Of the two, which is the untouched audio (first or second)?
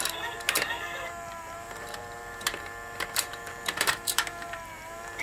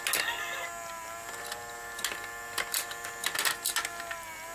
second